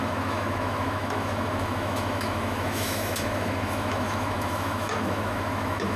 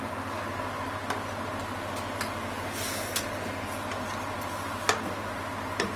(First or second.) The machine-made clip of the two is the first